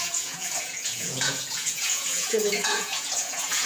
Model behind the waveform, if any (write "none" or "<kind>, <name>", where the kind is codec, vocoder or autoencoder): vocoder, Vocos